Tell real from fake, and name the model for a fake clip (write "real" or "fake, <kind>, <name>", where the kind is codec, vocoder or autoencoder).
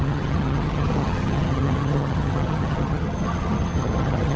fake, vocoder, HiFi-GAN